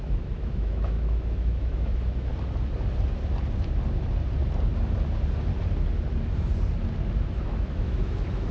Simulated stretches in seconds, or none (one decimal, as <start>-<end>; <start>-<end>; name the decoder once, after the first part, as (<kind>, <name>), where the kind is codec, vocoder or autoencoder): 0.0-2.3 (autoencoder, DAC-VAE); 7.4-8.5

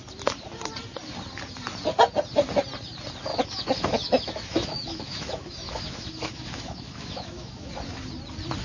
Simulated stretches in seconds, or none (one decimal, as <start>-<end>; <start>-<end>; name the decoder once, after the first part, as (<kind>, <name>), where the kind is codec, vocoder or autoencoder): 3.3-7.7 (autoencoder, DAC-VAE)

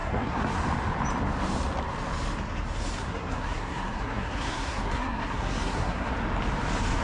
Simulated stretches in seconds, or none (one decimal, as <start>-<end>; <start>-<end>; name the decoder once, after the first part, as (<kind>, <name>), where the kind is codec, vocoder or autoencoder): 0.0-0.5 (codec, SNAC); 3.0-6.1

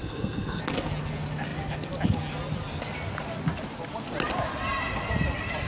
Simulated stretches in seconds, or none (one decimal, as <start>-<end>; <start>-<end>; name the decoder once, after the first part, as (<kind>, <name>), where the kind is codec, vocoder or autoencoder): 0.0-0.6 (codec, SNAC)

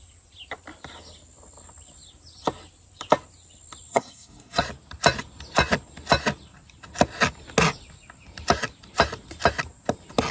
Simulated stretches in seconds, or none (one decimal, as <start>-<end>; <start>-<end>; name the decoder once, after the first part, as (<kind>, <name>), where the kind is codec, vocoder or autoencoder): 3.9-4.6 (codec, SNAC)